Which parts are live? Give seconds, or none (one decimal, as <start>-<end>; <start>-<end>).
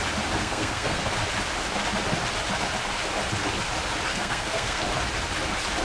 0.0-0.4; 1.0-4.1; 4.8-5.8